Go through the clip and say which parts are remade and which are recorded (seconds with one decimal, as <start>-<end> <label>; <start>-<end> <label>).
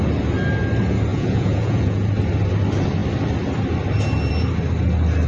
0.0-1.1 recorded; 1.1-2.1 remade; 2.1-5.3 recorded